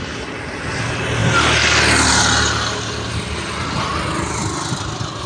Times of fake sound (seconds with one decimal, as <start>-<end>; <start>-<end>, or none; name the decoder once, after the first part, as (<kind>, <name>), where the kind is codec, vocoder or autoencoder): none